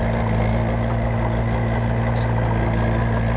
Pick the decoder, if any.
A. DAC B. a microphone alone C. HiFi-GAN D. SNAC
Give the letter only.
B